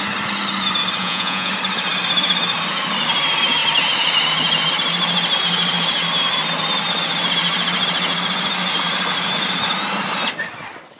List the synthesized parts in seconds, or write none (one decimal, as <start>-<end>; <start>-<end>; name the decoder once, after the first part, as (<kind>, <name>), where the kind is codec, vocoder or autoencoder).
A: 1.0-1.5 (vocoder, Vocos)